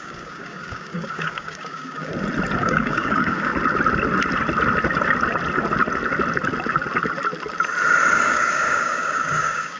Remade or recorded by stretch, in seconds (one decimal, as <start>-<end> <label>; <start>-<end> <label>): 0.0-2.1 remade; 2.1-2.6 recorded; 2.6-3.5 remade; 3.5-8.1 recorded; 8.1-9.8 remade